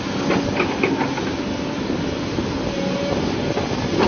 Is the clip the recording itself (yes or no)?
yes